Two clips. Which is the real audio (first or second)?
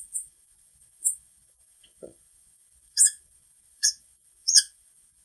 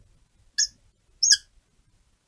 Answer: second